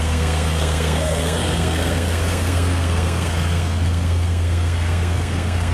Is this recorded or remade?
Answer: remade